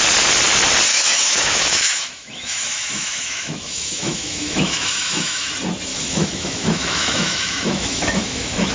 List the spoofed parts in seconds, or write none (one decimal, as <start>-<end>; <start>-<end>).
0.9-5.5; 5.9-8.7